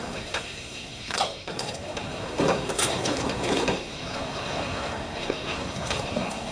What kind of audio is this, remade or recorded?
remade